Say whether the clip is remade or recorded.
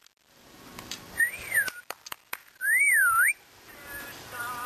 remade